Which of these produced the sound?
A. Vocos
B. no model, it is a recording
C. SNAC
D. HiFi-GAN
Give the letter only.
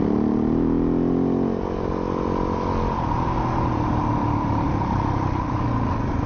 B